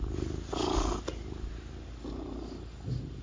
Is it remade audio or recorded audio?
recorded